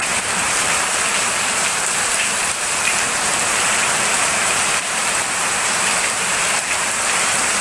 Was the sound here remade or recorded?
remade